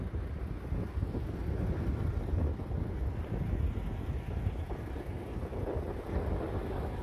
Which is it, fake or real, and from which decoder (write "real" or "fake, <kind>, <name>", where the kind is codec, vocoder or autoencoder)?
real